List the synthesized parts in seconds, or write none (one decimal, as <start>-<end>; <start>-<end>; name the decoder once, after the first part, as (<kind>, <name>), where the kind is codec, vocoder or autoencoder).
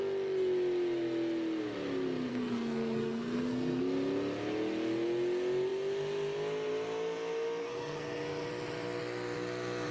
2.3-3.8 (codec, SNAC); 7.6-8.5